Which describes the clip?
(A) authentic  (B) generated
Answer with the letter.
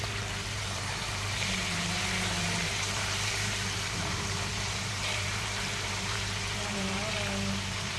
B